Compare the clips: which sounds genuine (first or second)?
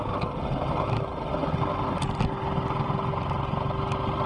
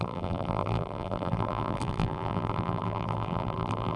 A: first